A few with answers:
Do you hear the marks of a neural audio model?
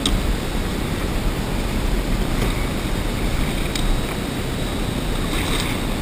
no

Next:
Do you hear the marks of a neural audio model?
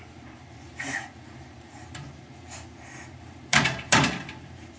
yes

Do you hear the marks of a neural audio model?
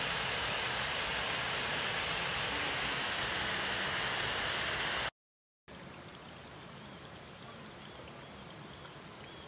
no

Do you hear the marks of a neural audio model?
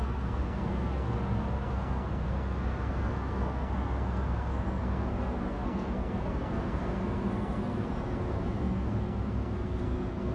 yes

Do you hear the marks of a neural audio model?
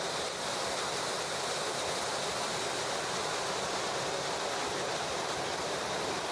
no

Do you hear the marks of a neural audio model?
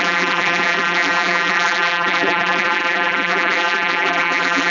yes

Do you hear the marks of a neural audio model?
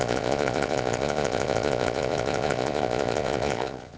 yes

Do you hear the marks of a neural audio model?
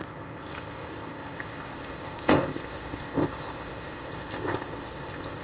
yes